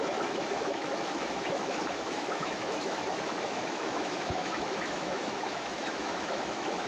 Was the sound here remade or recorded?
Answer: remade